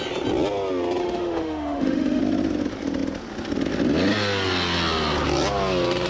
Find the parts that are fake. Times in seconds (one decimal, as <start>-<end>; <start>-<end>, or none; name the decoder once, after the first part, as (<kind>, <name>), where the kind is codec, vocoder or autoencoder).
1.0-2.2 (autoencoder, DAC-VAE)